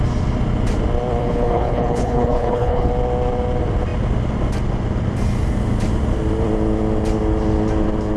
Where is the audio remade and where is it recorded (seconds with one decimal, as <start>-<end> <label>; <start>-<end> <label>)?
0.0-1.2 recorded; 1.2-2.9 remade; 2.9-8.2 recorded